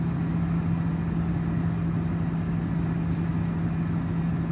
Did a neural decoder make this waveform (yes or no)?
no